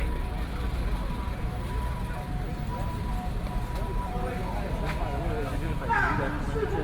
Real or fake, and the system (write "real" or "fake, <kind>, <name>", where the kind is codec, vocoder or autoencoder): real